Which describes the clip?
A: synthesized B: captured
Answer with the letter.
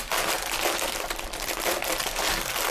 A